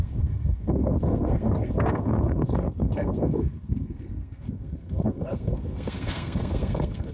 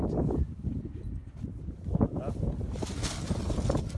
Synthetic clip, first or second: first